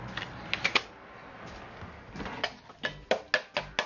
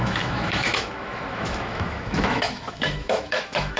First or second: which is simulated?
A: second